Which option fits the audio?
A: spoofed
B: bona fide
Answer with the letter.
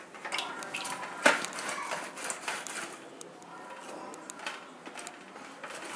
B